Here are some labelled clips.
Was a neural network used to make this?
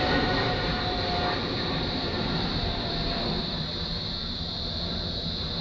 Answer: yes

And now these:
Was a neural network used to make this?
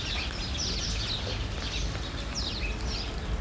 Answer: no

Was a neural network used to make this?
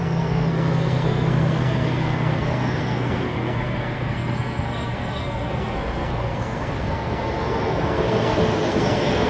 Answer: yes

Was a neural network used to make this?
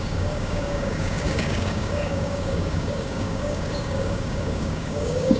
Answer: yes